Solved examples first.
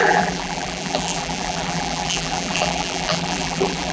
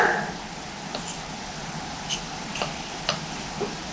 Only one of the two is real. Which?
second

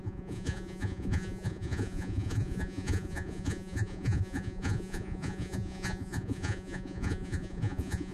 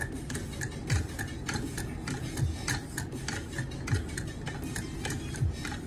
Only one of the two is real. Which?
second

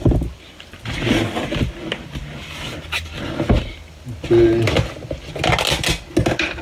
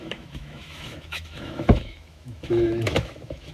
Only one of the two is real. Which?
first